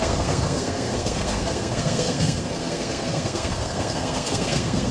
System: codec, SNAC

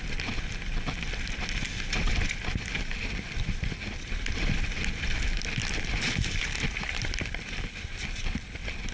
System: none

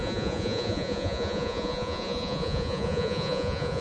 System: vocoder, Vocos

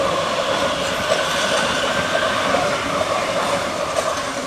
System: vocoder, BigVGAN v2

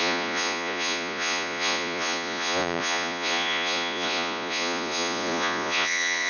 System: vocoder, Vocos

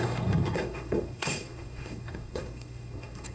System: codec, SNAC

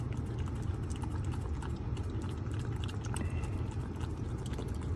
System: none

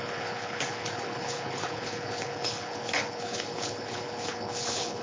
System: codec, HILCodec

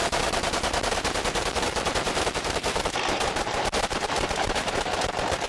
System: vocoder, BigVGAN v2